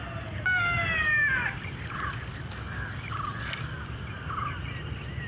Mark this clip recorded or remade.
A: recorded